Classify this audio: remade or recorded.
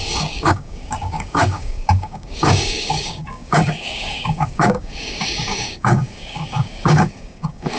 remade